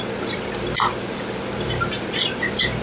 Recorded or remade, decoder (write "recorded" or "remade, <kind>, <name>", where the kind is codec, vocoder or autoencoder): recorded